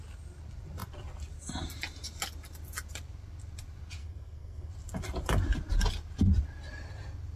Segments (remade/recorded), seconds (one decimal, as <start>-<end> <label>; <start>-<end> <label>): 0.0-4.0 recorded; 4.0-4.7 remade; 4.7-7.4 recorded